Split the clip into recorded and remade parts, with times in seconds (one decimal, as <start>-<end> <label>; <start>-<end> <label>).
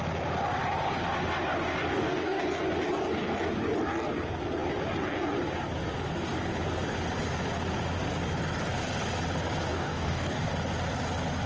0.0-1.9 recorded; 1.9-2.4 remade; 2.4-9.7 recorded; 9.7-10.5 remade; 10.5-11.5 recorded